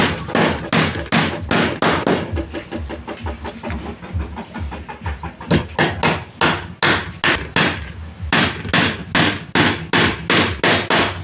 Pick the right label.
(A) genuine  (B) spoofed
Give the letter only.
A